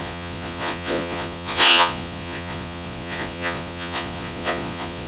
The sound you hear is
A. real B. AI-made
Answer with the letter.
B